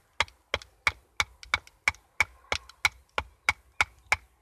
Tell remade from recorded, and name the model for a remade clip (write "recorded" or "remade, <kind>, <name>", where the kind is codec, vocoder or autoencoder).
recorded